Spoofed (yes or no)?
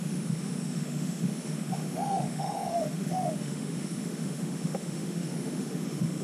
yes